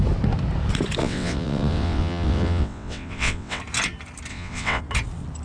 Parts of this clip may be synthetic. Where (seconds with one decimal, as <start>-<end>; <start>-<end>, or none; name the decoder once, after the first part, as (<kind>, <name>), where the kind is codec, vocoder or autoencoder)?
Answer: 1.0-3.6 (vocoder, WaveNeXt); 4.3-4.8